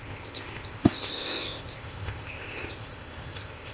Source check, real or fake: fake